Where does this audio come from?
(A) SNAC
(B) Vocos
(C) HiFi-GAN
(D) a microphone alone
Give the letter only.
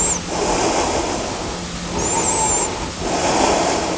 D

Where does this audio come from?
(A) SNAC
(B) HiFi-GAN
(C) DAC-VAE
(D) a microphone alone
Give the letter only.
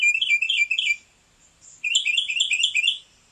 D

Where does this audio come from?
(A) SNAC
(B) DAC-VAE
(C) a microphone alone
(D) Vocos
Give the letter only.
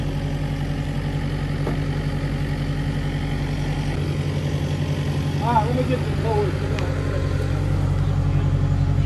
C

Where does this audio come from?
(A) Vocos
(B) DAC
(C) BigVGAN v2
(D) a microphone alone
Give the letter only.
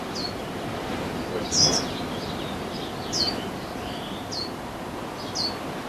D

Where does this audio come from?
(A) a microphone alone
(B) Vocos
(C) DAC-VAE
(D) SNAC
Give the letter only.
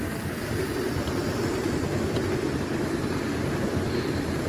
A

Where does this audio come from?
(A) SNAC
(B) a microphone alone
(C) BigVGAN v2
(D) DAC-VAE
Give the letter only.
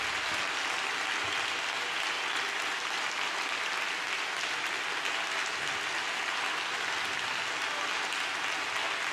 B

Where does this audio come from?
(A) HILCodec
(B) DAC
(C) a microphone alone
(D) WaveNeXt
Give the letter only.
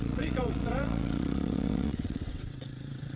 D